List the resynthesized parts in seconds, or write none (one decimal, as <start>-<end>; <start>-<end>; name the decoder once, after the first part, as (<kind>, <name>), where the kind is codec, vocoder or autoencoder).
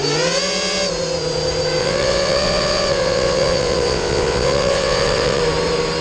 1.8-5.4 (vocoder, WaveNeXt)